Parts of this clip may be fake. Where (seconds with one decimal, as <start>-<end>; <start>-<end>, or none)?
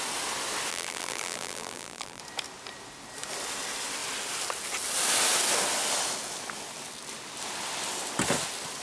0.7-2.2